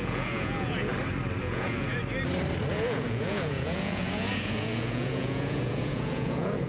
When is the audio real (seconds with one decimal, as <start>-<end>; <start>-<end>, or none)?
0.9-1.4; 2.0-2.7